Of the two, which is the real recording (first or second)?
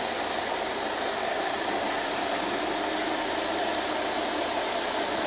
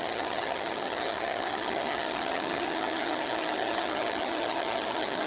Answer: first